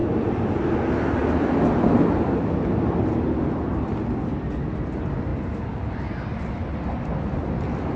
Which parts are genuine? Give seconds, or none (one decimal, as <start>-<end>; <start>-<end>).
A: 0.0-8.0